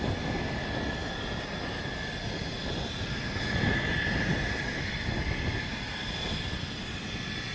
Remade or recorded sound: recorded